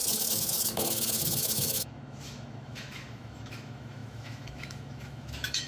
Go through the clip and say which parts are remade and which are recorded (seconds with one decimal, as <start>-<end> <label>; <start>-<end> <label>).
0.0-5.7 remade